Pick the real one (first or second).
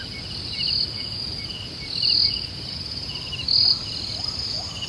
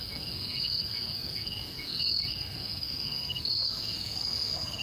first